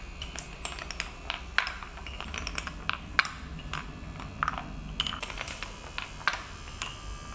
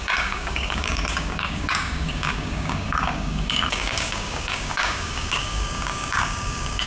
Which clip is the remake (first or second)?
second